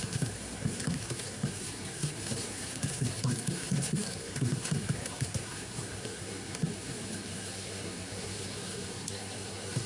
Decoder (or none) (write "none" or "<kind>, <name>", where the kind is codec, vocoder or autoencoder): codec, SNAC